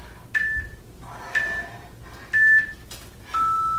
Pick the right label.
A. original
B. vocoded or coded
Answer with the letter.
A